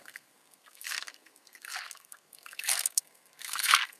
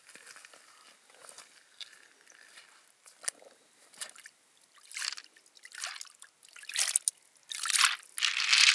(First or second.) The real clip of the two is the second